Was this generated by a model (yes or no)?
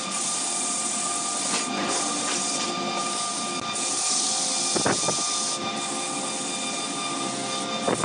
no